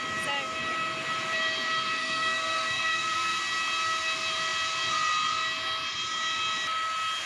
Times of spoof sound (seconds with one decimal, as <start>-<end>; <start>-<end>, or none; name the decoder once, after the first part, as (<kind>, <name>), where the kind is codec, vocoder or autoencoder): 2.0-3.4 (codec, SNAC)